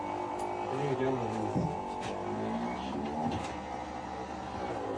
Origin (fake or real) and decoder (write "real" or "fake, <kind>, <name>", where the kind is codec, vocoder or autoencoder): real